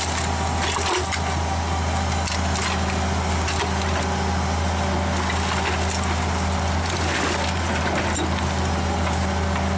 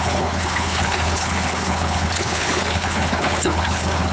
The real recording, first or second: first